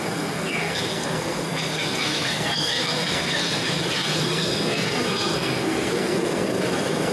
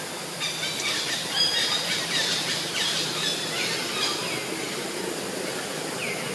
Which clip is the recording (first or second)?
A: second